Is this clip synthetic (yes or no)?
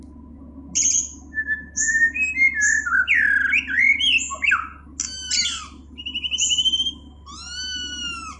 no